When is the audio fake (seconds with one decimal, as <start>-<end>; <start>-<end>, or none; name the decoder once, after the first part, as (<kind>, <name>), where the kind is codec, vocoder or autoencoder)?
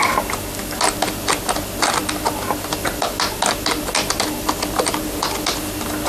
none